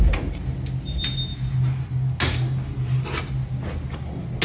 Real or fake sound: real